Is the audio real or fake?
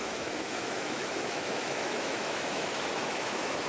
fake